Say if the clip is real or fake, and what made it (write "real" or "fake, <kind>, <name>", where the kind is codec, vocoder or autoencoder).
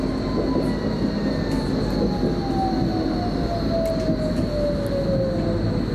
real